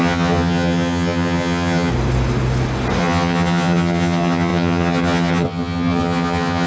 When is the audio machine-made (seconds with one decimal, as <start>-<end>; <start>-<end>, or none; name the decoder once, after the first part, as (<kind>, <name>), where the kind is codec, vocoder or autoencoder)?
0.0-1.9 (vocoder, HiFi-GAN); 3.0-6.7